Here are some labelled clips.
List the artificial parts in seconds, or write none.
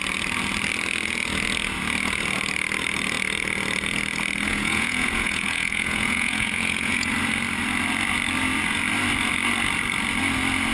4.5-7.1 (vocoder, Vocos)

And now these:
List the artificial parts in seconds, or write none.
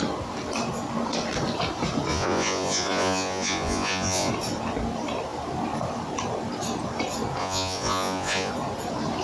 2.1-4.3 (vocoder, Vocos); 7.4-8.5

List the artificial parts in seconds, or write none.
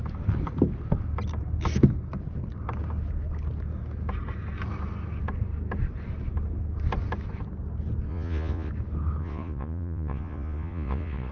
8.1-8.7 (vocoder, Vocos); 9.2-11.3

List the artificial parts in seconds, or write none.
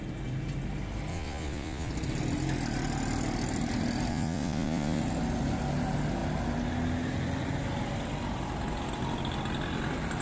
1.1-1.9 (vocoder, Vocos); 4.1-5.0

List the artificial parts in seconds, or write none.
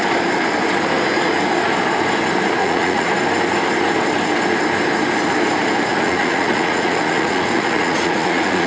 2.6-3.1 (vocoder, Vocos); 5.9-8.7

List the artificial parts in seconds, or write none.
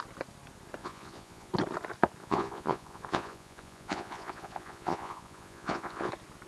0.8-1.5 (vocoder, Vocos); 2.2-6.1